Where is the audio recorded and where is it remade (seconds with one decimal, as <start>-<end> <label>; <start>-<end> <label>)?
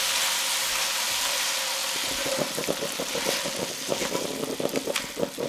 0.0-5.5 recorded